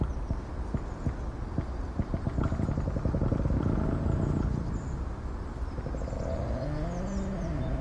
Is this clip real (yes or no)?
yes